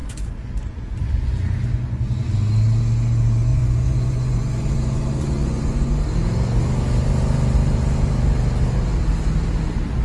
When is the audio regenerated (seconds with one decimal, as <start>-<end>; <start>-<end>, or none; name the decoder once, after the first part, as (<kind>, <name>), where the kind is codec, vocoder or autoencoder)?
0.0-2.3 (vocoder, Vocos); 3.5-6.0